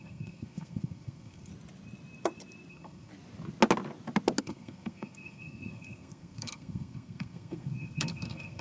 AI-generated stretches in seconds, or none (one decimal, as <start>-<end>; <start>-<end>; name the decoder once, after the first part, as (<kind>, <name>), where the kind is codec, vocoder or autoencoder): 0.0-1.5 (codec, SNAC); 2.7-3.1; 4.4-8.6